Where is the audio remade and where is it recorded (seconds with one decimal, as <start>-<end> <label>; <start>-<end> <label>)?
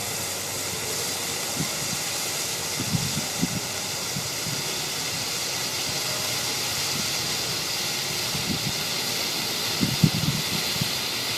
0.0-11.4 recorded